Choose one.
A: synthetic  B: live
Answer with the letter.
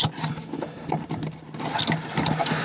B